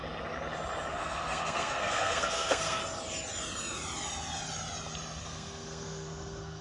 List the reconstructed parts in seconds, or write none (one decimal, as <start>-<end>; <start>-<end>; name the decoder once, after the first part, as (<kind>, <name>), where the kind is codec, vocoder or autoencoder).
0.9-2.8 (codec, SNAC); 5.2-6.6